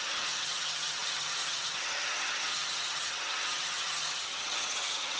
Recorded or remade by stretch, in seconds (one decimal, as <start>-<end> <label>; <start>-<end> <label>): 0.0-5.2 remade